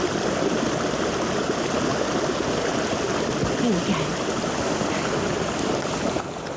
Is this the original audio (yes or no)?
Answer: yes